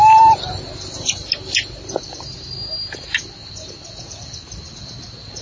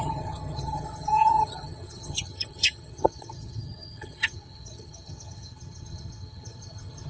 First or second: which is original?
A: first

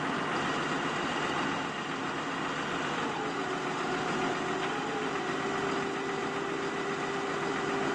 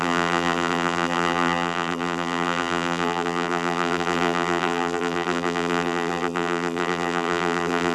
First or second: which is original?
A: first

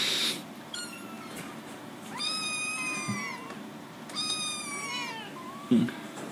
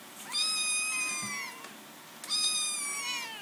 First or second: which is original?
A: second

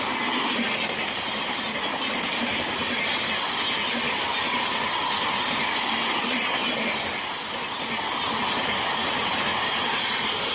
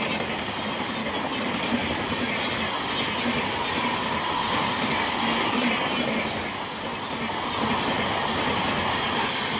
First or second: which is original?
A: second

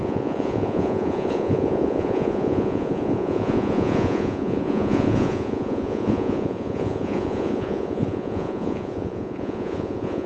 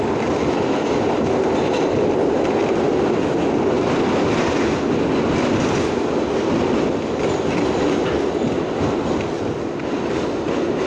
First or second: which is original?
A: second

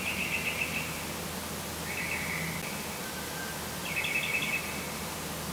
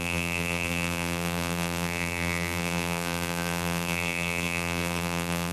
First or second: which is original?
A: first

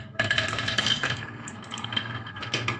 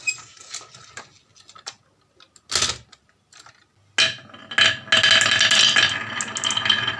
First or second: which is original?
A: second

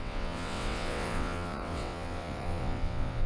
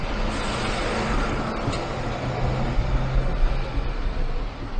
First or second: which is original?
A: second